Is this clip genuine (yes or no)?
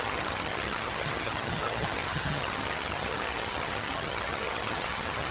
no